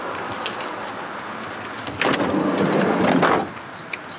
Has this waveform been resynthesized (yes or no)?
no